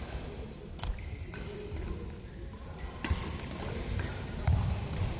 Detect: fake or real real